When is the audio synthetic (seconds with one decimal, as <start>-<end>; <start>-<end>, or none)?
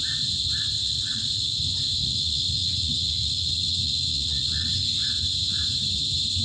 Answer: 0.8-1.6; 2.0-4.7